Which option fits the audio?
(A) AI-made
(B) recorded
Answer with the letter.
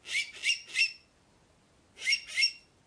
B